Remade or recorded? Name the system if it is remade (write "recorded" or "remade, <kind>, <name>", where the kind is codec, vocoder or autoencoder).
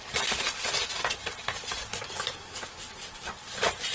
recorded